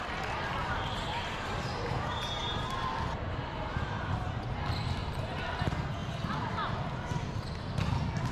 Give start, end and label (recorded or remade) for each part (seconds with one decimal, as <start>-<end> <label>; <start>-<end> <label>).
0.0-1.7 recorded; 1.7-2.4 remade; 2.4-3.4 recorded; 3.4-4.5 remade; 4.5-8.3 recorded